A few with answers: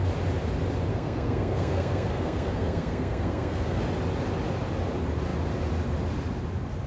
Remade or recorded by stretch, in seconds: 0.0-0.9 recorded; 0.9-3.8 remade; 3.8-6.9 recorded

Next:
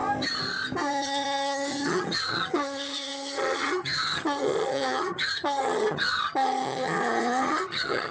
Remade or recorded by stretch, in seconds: 0.0-0.9 recorded; 0.9-8.1 remade

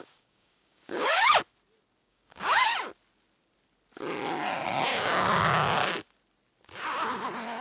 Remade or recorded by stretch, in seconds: 0.0-1.3 remade; 1.3-2.0 recorded; 2.0-2.7 remade; 2.7-7.6 recorded

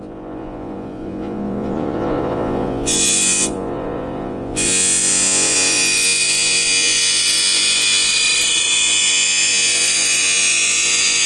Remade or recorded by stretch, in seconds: 0.0-8.1 remade; 8.1-8.7 recorded; 8.7-11.3 remade

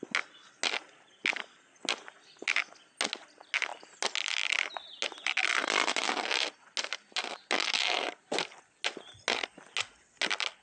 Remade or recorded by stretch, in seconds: 0.0-10.6 recorded

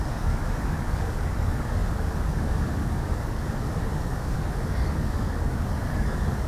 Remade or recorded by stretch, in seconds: 0.0-6.5 remade

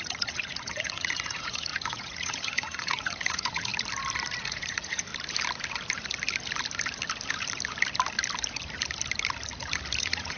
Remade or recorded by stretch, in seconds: 0.0-3.7 remade; 3.7-4.4 recorded; 4.4-5.1 remade; 5.1-10.0 recorded; 10.0-10.4 remade